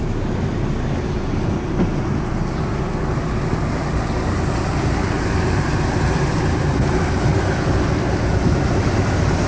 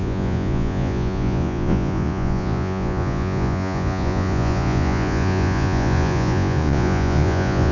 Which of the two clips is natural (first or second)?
first